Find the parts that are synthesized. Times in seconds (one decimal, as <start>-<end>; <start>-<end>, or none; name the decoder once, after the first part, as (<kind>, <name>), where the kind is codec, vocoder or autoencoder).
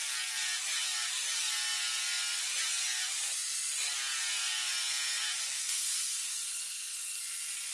5.4-7.2 (codec, SNAC)